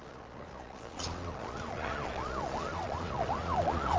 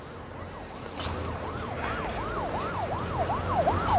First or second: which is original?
second